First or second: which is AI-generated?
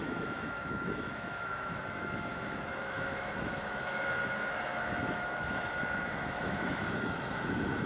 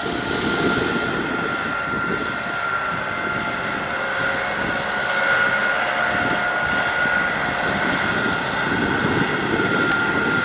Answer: first